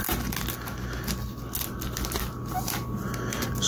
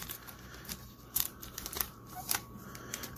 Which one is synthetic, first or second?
second